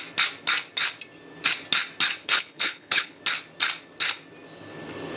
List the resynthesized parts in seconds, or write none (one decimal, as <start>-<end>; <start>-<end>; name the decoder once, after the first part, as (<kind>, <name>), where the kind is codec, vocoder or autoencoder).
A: 2.2-3.2 (codec, HILCodec)